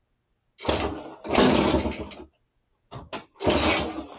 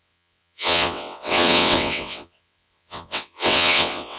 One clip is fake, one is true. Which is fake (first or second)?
second